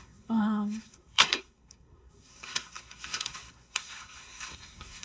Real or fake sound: fake